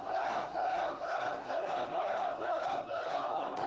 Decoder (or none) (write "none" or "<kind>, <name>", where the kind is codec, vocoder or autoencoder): codec, SNAC